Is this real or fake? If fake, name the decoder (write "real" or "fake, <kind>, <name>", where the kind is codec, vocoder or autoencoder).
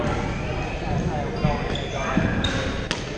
real